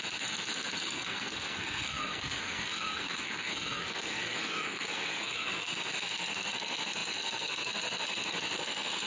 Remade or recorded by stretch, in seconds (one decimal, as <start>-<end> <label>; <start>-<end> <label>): 0.0-9.1 remade